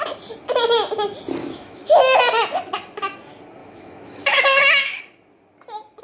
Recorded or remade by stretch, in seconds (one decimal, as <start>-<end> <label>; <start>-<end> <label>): 0.0-1.4 recorded; 1.4-2.2 remade; 2.2-3.6 recorded; 3.6-5.0 remade; 5.0-6.0 recorded

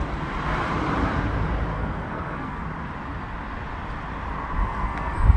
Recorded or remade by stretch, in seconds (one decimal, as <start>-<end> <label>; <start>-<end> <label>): 0.0-1.7 recorded; 1.7-2.6 remade; 2.6-4.6 recorded; 4.6-5.4 remade

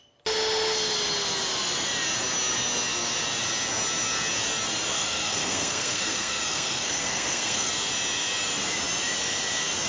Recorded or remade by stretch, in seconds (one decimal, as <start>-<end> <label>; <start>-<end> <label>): 0.0-4.9 recorded; 4.9-7.7 remade; 7.7-9.9 recorded

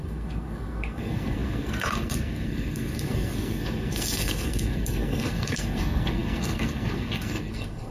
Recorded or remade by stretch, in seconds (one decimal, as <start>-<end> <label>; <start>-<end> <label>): 0.0-7.9 remade

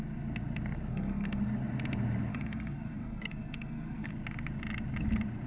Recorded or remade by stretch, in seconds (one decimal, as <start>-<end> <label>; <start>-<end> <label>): 0.0-0.9 recorded; 0.9-1.4 remade; 1.4-2.3 recorded; 2.3-4.1 remade; 4.1-5.5 recorded

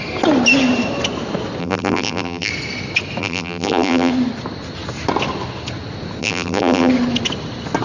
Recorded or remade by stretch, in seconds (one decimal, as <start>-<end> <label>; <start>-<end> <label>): 0.0-1.6 recorded; 1.6-2.5 remade; 2.5-3.2 recorded; 3.2-4.1 remade; 4.1-6.2 recorded; 6.2-6.9 remade; 6.9-7.8 recorded

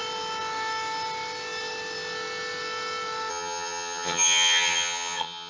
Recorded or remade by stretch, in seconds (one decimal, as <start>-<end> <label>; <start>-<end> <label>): 0.0-3.3 recorded; 3.3-5.5 remade

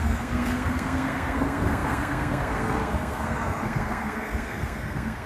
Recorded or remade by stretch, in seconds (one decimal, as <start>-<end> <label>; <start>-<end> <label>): 0.0-5.3 remade